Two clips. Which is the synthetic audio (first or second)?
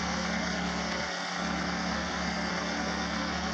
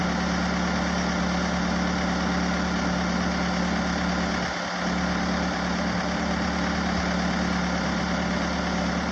first